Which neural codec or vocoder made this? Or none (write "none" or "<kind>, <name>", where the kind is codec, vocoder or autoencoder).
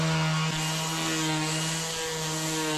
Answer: none